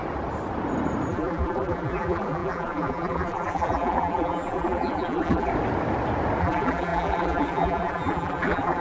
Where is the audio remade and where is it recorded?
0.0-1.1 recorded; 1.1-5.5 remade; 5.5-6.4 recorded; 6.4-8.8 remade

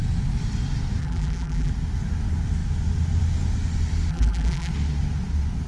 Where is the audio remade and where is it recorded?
0.0-1.0 recorded; 1.0-1.7 remade; 1.7-4.1 recorded; 4.1-4.7 remade; 4.7-5.7 recorded

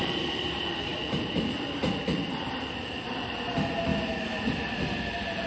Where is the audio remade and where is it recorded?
0.0-3.9 remade; 3.9-4.4 recorded; 4.4-5.5 remade

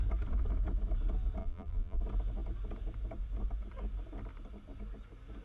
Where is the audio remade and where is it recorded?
0.0-1.4 recorded; 1.4-2.0 remade; 2.0-5.4 recorded

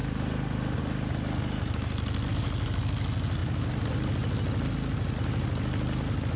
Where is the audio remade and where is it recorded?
0.0-2.3 recorded; 2.3-2.8 remade; 2.8-3.4 recorded; 3.4-3.9 remade; 3.9-6.4 recorded

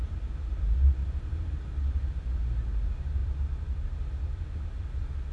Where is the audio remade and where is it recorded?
0.0-1.0 recorded; 1.0-2.1 remade; 2.1-3.2 recorded; 3.2-4.0 remade; 4.0-5.3 recorded

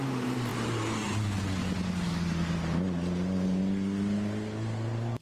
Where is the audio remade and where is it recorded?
0.0-5.2 recorded

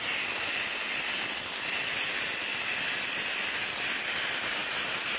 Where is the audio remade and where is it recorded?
0.0-2.5 recorded; 2.5-3.1 remade; 3.1-4.6 recorded; 4.6-5.2 remade